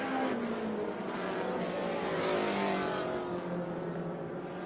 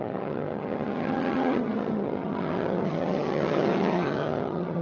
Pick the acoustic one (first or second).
first